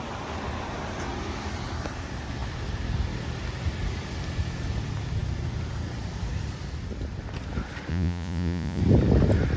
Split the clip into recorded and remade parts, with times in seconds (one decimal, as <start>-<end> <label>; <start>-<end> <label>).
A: 0.0-7.9 recorded; 7.9-8.8 remade; 8.8-9.6 recorded

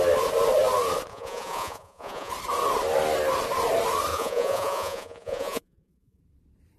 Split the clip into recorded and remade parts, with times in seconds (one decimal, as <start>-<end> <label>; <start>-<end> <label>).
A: 0.0-1.1 recorded; 1.1-2.3 remade; 2.3-4.1 recorded; 4.1-6.2 remade; 6.2-6.8 recorded

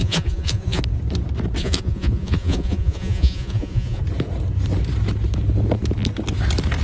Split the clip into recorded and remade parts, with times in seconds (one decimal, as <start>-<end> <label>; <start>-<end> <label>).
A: 0.0-0.8 remade; 0.8-1.6 recorded; 1.6-4.0 remade; 4.0-6.8 recorded

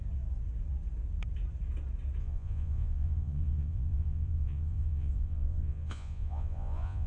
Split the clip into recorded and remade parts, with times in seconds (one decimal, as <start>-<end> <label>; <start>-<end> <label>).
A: 0.0-2.2 recorded; 2.2-7.1 remade

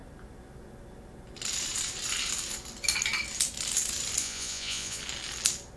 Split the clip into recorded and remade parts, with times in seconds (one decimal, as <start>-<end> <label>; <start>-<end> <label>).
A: 0.0-4.2 recorded; 4.2-5.0 remade; 5.0-5.8 recorded

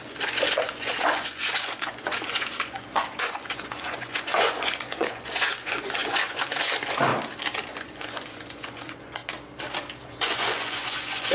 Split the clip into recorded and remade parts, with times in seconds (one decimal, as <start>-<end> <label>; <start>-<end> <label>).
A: 0.0-7.1 remade; 7.1-7.7 recorded; 7.7-9.2 remade; 9.2-10.0 recorded; 10.0-11.3 remade